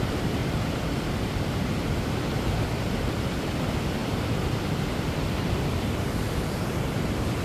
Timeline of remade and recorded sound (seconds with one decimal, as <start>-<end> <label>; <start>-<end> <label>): 0.0-0.4 remade; 0.4-1.3 recorded; 1.3-7.4 remade